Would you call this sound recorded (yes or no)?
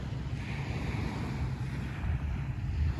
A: yes